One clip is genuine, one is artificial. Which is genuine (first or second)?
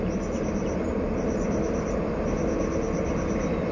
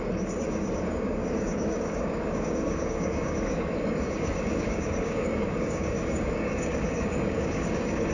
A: first